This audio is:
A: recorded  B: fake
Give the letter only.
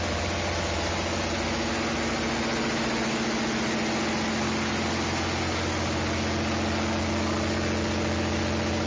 A